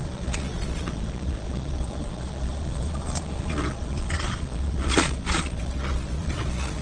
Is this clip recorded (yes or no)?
no